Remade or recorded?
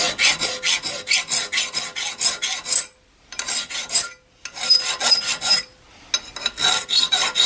recorded